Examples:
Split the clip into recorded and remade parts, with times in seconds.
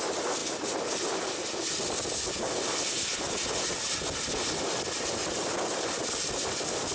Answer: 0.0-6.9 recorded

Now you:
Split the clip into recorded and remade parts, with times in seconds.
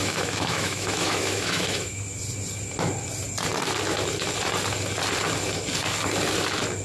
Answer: 0.0-2.0 remade; 2.0-6.8 recorded